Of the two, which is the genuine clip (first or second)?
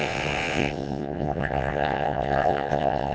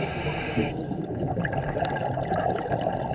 second